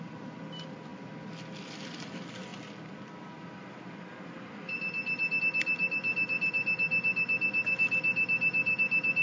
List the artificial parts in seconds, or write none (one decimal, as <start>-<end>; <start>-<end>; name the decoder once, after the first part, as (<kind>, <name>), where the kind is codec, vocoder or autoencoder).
0.0-0.9 (vocoder, BigVGAN v2); 1.7-2.5; 5.4-9.2